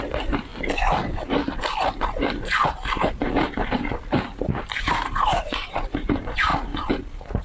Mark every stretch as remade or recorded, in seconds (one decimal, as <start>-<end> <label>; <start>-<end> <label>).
0.0-0.5 remade; 0.5-4.5 recorded; 4.5-6.5 remade; 6.5-7.4 recorded